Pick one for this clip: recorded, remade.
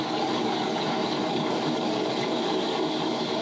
remade